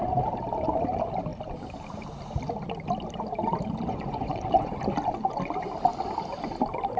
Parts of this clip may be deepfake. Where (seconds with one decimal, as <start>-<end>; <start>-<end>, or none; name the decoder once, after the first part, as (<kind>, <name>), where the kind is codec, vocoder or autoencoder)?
3.9-4.8 (vocoder, Vocos)